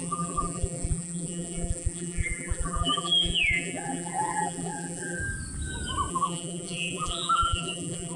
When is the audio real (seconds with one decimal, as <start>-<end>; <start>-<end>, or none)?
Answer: 5.2-6.1